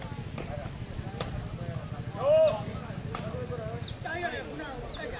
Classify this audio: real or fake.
real